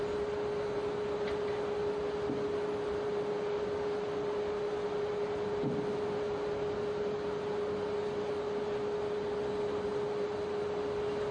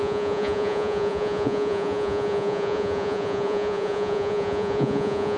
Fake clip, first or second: second